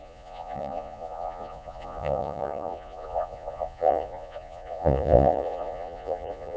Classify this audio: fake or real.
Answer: fake